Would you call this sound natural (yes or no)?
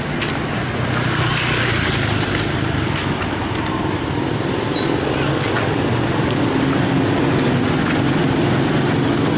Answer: yes